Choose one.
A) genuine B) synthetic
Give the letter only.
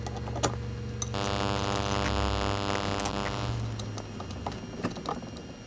A